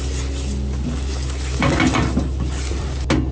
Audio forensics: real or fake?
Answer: real